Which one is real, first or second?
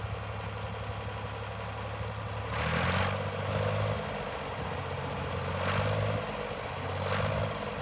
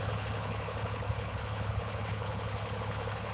first